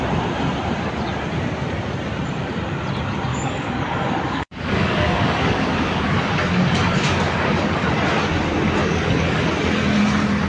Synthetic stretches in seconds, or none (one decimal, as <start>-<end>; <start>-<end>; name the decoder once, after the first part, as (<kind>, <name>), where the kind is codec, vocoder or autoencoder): 3.3-7.9 (codec, DAC); 8.8-9.5